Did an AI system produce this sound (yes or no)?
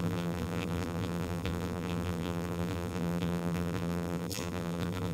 yes